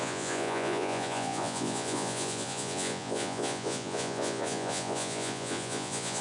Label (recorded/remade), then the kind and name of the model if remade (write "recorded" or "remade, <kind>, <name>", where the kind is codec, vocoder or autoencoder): remade, vocoder, Vocos